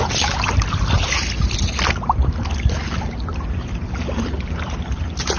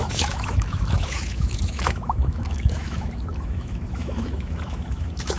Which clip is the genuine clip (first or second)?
first